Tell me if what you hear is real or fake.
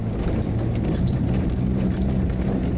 real